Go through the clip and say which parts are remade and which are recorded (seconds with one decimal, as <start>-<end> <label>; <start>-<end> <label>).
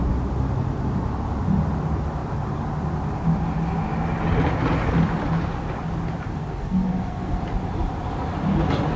0.0-6.3 recorded; 6.3-7.4 remade; 7.4-9.0 recorded